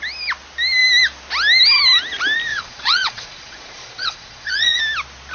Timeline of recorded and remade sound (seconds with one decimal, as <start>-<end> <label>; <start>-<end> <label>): 0.0-2.5 recorded; 2.5-4.8 remade; 4.8-5.3 recorded